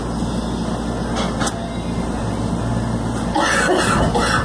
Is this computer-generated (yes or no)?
no